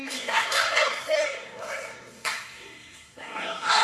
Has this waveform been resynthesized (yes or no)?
yes